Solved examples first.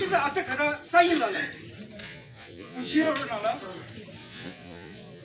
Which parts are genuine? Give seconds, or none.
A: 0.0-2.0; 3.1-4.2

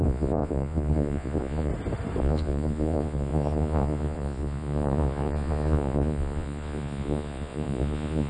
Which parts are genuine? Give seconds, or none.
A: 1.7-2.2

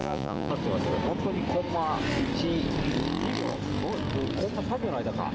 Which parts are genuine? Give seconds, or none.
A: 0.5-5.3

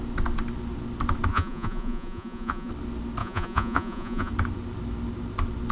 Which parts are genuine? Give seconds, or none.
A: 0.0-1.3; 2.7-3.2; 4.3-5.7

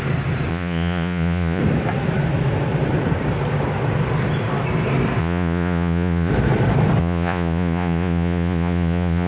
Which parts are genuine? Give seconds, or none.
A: 0.0-0.5; 1.6-5.2; 6.3-7.0

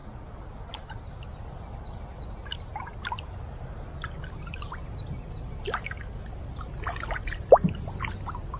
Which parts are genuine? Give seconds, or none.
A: 0.0-8.6

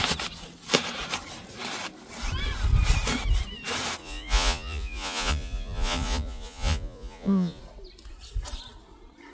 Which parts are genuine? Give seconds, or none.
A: 0.0-4.0; 7.6-9.3